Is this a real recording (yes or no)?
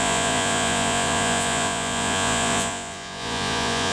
no